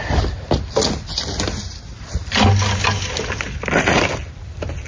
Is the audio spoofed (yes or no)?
no